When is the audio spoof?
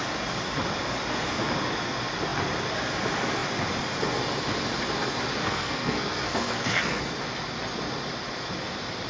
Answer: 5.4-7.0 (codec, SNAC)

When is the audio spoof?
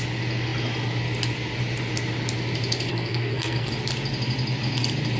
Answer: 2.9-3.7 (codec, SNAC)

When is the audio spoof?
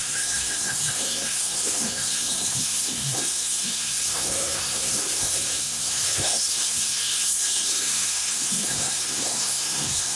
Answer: 0.0-10.2 (codec, SNAC)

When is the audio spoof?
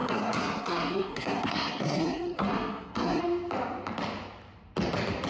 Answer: 0.0-3.2 (codec, SNAC)